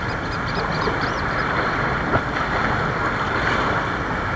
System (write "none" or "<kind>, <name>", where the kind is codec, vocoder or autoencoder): none